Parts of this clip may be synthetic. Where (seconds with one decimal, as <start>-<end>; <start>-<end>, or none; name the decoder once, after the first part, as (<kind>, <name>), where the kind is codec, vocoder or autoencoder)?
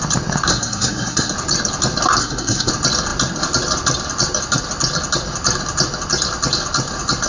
0.5-1.3 (codec, SNAC); 2.2-2.7